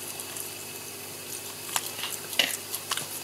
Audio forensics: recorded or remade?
recorded